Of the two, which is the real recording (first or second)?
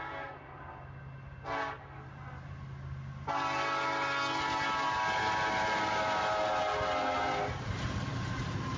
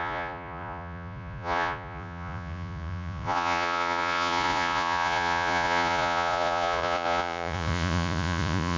first